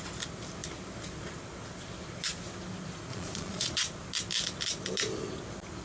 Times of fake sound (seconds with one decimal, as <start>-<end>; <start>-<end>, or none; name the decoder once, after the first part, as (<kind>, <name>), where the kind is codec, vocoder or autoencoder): 3.1-3.8 (vocoder, Vocos)